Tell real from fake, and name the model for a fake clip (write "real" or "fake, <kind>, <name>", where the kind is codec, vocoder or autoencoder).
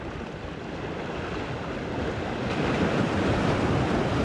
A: real